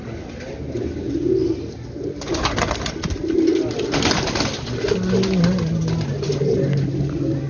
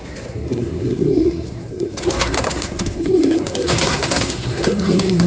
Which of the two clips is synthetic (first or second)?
second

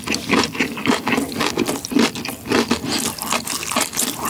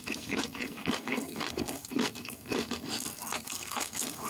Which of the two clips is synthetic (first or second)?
second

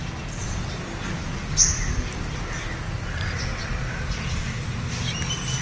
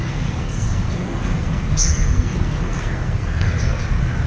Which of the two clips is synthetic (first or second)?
second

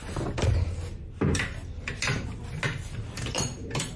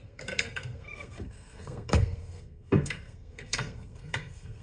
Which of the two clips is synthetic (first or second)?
second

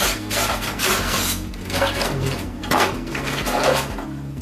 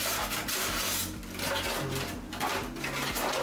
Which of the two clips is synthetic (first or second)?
first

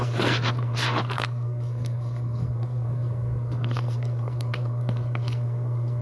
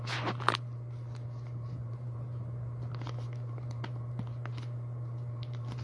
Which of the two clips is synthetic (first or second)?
first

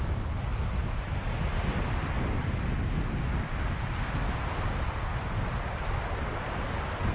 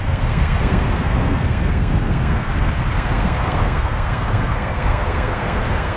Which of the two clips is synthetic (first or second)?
second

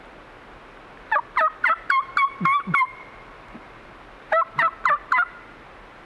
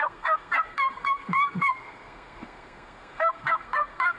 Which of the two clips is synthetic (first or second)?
second